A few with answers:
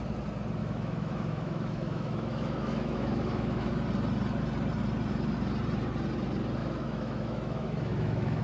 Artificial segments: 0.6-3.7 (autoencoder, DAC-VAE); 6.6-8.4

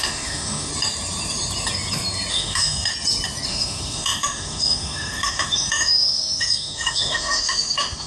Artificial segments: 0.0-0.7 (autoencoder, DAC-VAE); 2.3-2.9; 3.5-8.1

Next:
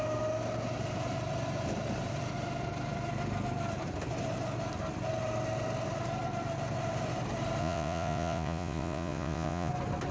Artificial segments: 7.6-9.7 (vocoder, Vocos)

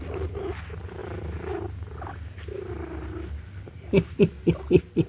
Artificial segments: none

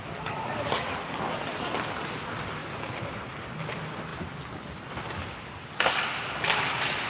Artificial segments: none

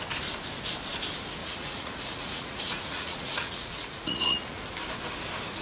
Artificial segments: 1.4-4.6 (vocoder, Vocos)

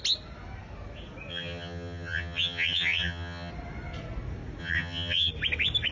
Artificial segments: 1.3-3.5 (vocoder, HiFi-GAN); 4.6-5.3